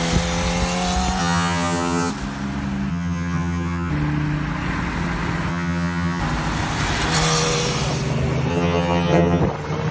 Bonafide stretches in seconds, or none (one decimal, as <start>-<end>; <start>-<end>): 0.0-1.2; 2.1-2.9; 3.9-5.5; 6.2-8.5; 9.4-9.9